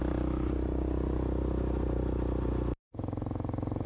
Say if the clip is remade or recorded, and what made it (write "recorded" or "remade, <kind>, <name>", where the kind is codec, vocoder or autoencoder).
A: recorded